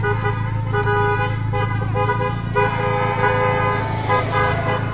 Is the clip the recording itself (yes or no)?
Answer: yes